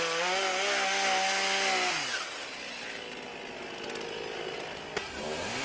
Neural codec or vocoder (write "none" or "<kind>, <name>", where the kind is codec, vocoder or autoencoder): none